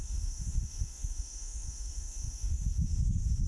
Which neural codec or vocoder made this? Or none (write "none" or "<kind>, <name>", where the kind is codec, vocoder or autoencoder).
autoencoder, DAC-VAE